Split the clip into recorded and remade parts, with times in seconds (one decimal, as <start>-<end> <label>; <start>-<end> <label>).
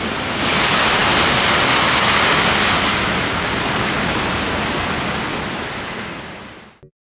0.0-7.0 recorded